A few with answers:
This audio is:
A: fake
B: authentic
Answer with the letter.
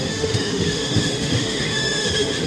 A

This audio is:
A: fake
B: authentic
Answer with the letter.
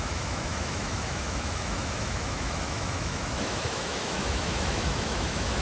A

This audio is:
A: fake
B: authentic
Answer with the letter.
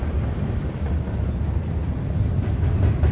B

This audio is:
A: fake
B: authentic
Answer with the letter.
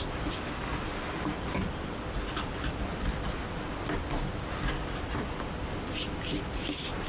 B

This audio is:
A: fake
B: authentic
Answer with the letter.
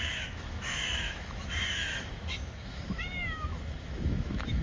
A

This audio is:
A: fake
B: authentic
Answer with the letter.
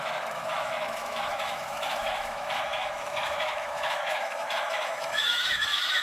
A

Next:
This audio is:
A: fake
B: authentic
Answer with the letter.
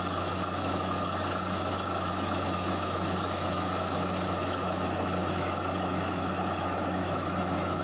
A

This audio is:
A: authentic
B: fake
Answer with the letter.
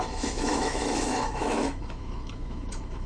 B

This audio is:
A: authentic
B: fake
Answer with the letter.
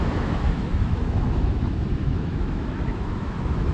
B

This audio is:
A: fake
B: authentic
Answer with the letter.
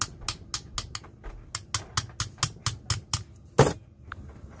B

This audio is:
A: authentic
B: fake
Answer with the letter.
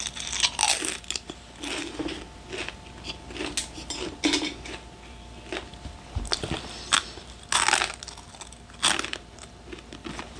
A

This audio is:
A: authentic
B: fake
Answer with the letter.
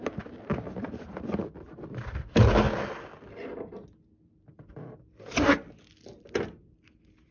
A